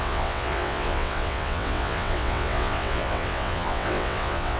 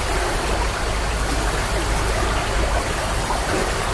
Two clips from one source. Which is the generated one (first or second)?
first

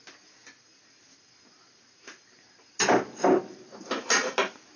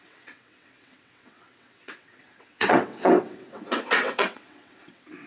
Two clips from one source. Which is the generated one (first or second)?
second